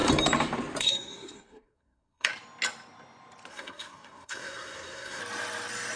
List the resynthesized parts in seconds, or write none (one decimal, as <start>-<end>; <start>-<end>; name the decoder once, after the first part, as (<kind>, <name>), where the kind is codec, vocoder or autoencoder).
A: 0.8-2.3 (codec, SNAC); 3.5-5.2